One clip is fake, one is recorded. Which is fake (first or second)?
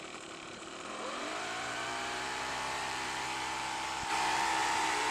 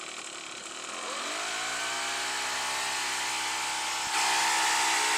first